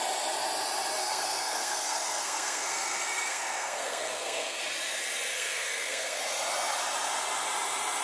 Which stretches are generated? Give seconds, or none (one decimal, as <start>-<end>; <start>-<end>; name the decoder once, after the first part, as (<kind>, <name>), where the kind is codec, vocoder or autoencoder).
1.0-4.6 (codec, SNAC); 5.3-6.2